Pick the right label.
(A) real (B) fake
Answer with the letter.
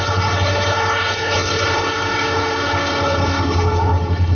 B